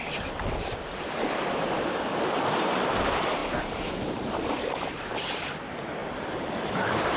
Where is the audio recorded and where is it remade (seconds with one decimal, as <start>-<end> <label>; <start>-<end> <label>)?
0.0-7.2 remade